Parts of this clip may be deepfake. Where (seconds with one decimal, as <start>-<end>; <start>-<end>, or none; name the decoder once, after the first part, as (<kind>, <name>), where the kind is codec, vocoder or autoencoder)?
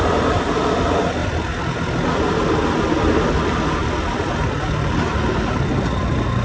none